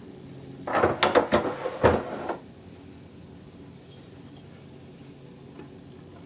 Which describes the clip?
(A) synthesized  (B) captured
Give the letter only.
B